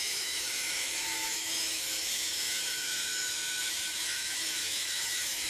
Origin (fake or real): fake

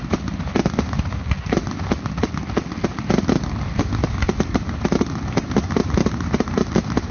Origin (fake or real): real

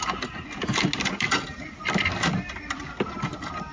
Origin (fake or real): real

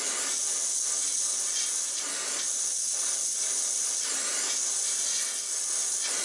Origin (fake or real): real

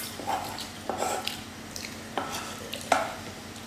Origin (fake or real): real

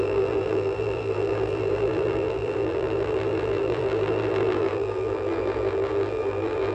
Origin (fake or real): fake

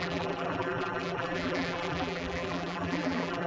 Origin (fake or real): fake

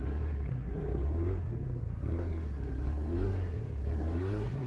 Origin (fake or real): fake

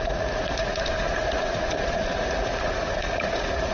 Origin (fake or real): fake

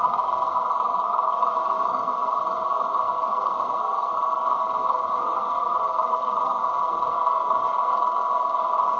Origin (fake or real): fake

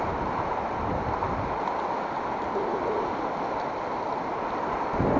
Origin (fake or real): real